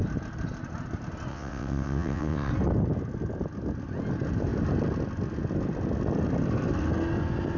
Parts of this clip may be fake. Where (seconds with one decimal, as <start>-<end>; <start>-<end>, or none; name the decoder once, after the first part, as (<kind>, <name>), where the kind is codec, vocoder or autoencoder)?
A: 1.3-2.5 (vocoder, WaveNeXt)

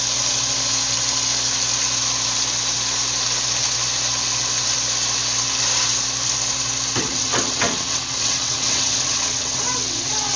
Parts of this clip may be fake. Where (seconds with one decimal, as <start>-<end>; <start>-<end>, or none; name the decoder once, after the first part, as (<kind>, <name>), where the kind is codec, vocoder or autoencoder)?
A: 7.0-10.4 (vocoder, WaveNeXt)

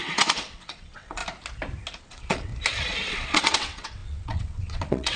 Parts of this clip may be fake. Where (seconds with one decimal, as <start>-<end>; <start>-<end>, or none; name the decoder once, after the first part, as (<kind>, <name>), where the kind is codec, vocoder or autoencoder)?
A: 0.0-1.2 (vocoder, WaveNeXt); 2.0-2.5; 3.1-5.2

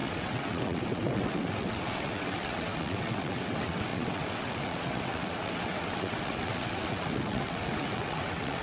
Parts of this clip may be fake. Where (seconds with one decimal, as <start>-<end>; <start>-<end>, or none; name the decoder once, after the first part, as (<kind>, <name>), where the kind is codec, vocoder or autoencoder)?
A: 0.0-8.6 (vocoder, WaveNeXt)

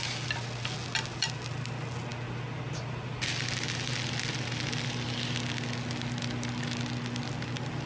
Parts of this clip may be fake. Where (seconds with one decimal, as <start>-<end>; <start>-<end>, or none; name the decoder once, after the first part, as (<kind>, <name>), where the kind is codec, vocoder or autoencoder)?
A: none

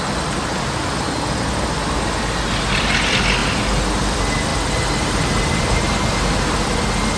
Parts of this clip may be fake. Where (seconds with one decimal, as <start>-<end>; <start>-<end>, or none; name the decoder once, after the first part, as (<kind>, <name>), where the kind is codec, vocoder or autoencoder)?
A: none